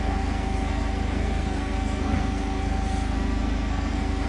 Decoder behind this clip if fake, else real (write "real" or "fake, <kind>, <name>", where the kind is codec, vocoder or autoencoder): fake, codec, SNAC